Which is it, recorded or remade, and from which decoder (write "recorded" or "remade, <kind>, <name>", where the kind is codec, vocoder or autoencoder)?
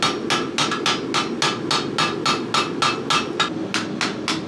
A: recorded